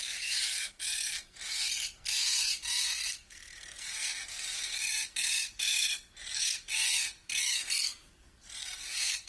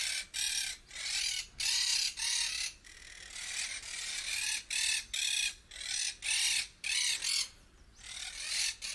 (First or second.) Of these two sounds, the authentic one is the second